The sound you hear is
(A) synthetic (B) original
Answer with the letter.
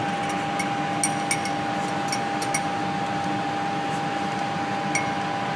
B